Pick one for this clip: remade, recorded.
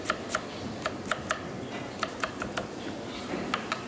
recorded